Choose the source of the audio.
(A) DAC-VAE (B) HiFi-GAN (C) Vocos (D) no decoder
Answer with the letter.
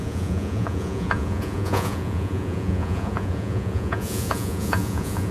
C